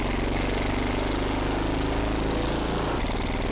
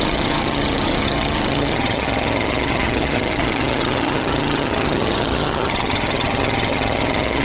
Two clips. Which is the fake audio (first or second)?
second